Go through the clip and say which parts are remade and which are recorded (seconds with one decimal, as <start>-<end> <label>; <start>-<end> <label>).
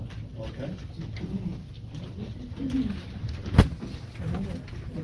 0.0-5.0 recorded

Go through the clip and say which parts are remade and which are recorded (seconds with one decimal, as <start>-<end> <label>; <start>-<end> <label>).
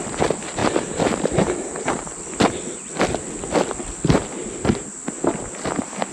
0.0-0.6 recorded; 0.6-4.3 remade; 4.3-6.1 recorded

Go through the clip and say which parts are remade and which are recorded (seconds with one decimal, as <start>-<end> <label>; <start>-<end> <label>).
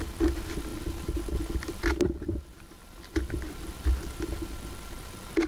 0.0-5.5 recorded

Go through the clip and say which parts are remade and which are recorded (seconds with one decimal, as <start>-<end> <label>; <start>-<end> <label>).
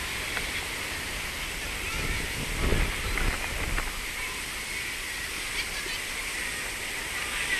0.0-7.6 recorded